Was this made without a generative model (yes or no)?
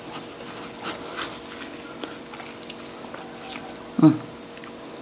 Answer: yes